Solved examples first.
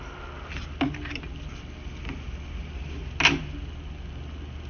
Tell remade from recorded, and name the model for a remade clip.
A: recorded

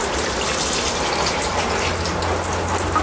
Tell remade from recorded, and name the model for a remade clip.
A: recorded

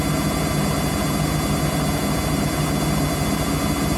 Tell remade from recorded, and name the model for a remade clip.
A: recorded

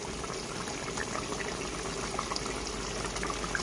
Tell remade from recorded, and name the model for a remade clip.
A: recorded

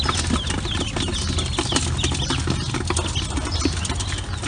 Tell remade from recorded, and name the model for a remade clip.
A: recorded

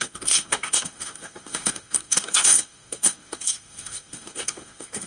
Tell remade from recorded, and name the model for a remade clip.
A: remade, codec, SNAC